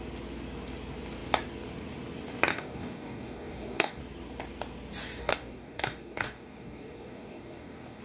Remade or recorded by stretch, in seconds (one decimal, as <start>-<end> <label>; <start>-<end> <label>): 0.0-2.5 recorded; 2.5-4.0 remade; 4.0-5.2 recorded; 5.2-8.0 remade